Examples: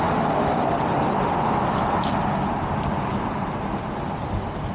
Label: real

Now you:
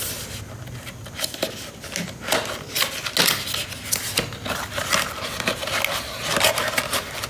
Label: real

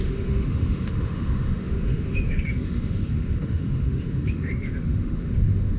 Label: fake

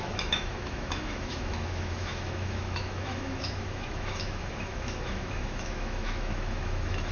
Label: fake